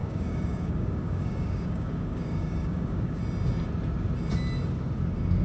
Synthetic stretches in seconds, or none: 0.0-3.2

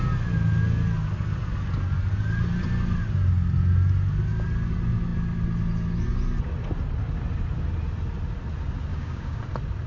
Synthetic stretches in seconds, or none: 8.9-9.4